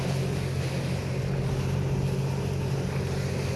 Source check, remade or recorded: recorded